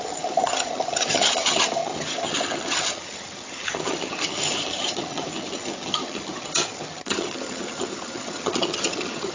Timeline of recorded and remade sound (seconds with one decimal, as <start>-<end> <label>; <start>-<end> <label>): 0.0-9.3 remade